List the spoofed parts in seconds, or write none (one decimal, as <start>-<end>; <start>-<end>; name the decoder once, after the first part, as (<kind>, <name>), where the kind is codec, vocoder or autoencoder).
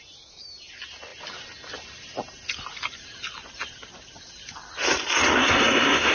5.4-6.1 (codec, SNAC)